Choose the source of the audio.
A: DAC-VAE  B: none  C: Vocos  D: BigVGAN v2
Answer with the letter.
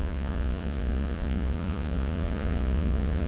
C